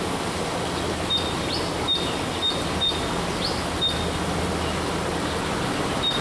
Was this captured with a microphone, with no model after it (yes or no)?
yes